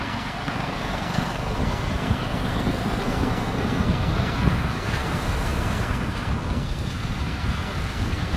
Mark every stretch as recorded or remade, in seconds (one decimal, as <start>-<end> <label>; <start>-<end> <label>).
0.0-8.4 remade